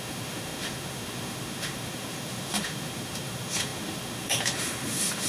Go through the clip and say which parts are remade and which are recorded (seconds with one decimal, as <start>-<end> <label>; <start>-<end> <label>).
0.0-5.3 remade